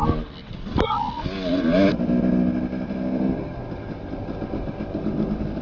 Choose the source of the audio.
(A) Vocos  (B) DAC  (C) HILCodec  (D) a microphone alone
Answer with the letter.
D